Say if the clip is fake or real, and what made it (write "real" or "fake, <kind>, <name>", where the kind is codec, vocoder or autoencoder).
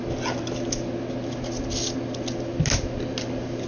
real